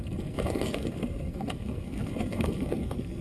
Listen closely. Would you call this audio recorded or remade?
remade